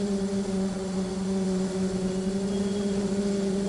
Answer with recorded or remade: remade